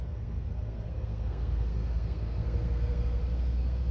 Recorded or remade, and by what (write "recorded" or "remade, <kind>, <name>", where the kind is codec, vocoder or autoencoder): remade, codec, SNAC